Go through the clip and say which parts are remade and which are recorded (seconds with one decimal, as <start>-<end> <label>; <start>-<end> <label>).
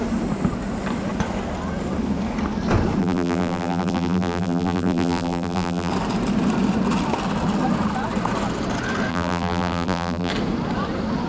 0.0-3.0 recorded; 3.0-5.9 remade; 5.9-9.1 recorded; 9.1-10.3 remade; 10.3-11.3 recorded